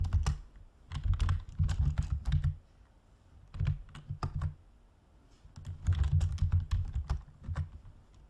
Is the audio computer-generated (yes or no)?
no